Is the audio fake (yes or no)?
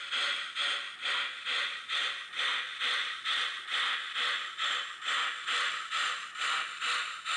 no